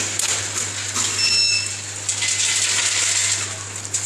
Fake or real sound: real